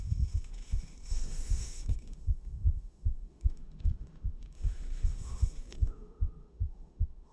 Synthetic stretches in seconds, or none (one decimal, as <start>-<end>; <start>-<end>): 0.0-7.3